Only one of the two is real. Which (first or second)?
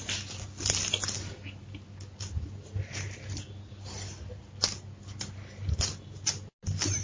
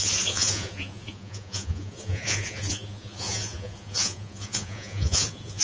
first